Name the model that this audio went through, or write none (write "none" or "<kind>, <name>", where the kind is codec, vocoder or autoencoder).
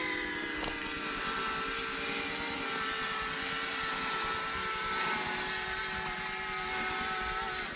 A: none